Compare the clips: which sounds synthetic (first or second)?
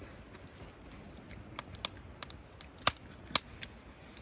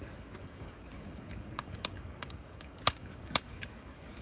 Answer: second